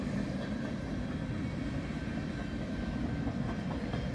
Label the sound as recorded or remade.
recorded